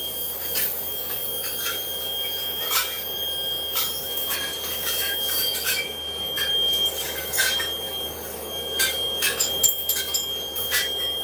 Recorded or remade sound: remade